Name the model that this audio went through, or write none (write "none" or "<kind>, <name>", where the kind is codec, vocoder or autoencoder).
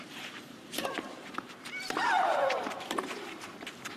vocoder, BigVGAN v2